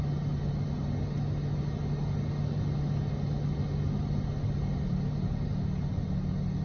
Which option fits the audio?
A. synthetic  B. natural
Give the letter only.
B